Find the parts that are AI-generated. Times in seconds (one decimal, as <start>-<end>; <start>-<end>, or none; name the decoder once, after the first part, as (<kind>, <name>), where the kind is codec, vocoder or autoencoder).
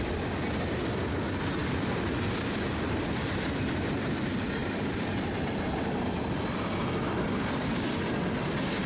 1.6-4.0 (vocoder, BigVGAN v2); 4.6-7.3